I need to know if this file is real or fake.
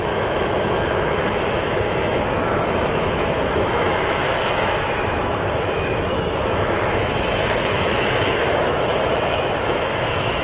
fake